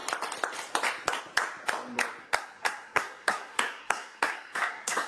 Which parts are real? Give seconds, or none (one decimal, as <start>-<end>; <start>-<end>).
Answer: 0.0-2.2